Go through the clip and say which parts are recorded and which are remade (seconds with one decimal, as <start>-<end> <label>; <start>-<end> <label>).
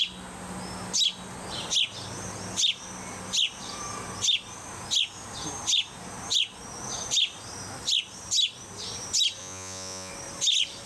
0.0-9.4 recorded; 9.4-10.1 remade; 10.1-10.9 recorded